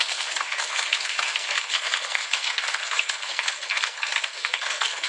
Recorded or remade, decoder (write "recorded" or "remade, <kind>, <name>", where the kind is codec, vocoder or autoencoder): remade, codec, SNAC